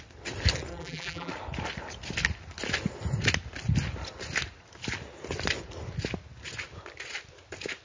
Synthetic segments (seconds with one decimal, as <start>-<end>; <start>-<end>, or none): 0.7-1.3